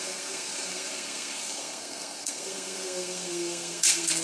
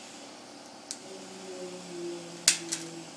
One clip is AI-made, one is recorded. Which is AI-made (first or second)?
first